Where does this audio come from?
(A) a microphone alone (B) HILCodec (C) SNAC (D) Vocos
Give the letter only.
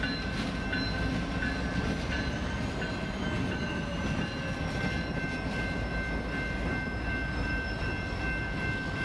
A